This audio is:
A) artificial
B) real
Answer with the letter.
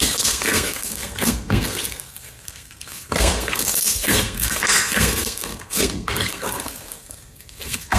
A